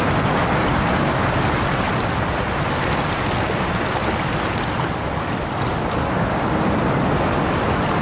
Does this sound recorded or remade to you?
recorded